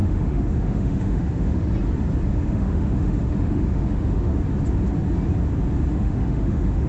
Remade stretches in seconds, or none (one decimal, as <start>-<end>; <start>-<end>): 0.0-1.7; 2.3-4.3; 5.9-6.9